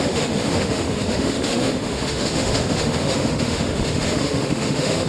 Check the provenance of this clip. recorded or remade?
remade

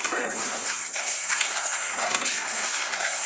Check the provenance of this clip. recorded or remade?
remade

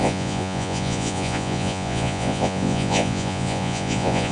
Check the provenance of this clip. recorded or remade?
remade